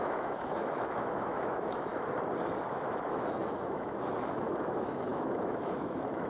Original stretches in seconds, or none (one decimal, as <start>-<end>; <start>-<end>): 1.9-2.7